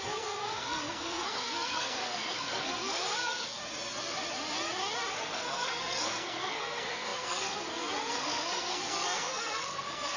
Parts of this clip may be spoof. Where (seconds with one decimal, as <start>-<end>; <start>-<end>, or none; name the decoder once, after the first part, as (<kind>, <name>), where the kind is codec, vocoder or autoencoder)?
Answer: 0.0-3.6 (codec, SNAC); 5.1-10.2